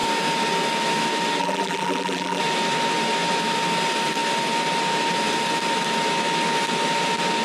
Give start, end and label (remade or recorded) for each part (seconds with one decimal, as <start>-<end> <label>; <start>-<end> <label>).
0.0-1.4 recorded; 1.4-2.4 remade; 2.4-7.4 recorded